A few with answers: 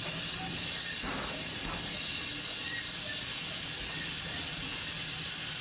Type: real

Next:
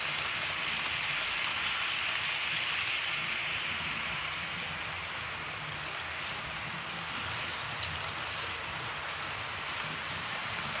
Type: real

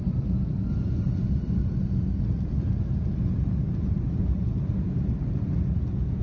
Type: real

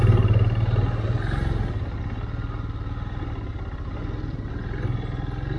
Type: real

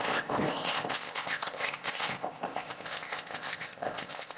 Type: fake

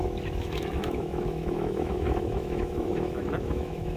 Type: fake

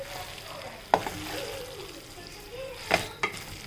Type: real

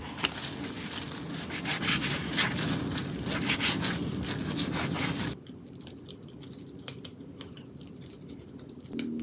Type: real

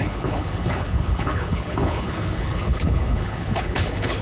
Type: fake